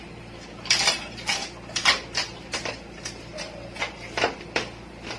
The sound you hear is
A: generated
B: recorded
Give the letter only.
A